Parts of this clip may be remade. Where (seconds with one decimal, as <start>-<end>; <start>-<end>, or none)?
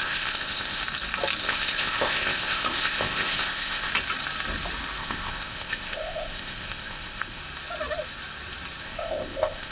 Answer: 0.0-0.8; 1.4-3.9; 5.0-7.4; 8.8-9.7